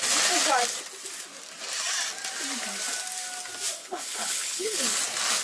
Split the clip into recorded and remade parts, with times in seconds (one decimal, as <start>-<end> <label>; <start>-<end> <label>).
0.0-3.8 recorded; 3.8-5.0 remade; 5.0-5.4 recorded